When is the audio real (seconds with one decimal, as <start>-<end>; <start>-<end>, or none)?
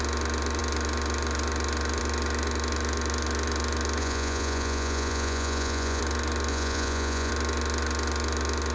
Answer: 0.0-4.0; 6.0-6.5; 7.3-8.7